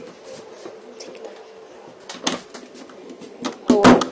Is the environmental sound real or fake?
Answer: real